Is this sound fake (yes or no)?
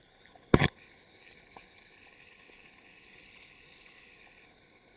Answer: yes